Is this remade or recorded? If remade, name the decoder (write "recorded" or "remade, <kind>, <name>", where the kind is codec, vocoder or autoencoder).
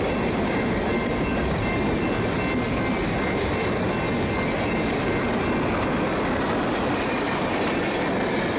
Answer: recorded